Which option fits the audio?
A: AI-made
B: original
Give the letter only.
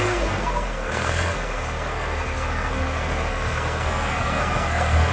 A